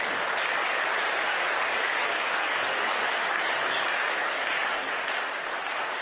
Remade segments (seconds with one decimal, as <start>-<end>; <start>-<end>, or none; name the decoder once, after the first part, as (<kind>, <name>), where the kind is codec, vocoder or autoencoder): 1.3-4.9 (codec, DAC)